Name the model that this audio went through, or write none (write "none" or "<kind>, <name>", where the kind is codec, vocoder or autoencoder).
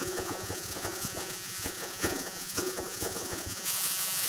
vocoder, Vocos